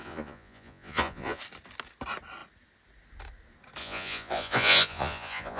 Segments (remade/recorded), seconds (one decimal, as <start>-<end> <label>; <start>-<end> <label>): 0.0-1.4 remade; 1.4-3.8 recorded; 3.8-5.6 remade